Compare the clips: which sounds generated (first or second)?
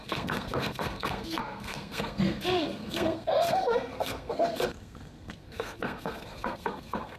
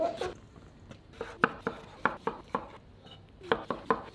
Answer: first